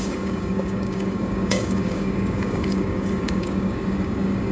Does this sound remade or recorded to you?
remade